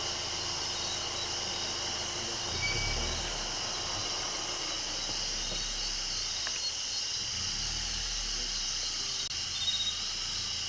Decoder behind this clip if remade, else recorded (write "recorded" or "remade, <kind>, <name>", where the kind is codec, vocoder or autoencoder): recorded